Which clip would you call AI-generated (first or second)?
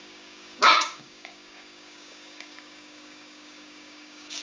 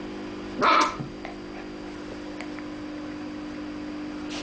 first